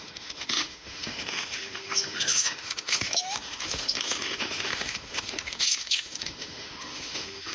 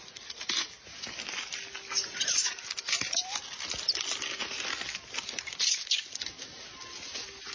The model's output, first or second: first